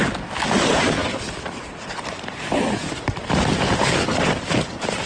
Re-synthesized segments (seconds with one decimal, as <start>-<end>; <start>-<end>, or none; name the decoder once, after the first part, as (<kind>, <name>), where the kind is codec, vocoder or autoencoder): none